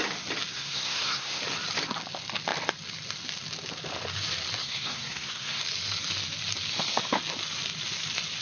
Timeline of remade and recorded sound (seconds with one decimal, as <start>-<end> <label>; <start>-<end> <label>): 0.0-0.5 recorded; 0.5-1.4 remade; 1.4-4.6 recorded; 4.6-5.6 remade; 5.6-8.4 recorded